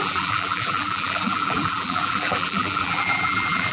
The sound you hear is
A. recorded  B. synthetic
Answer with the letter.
B